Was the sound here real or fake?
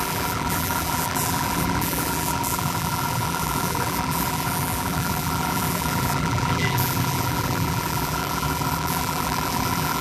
fake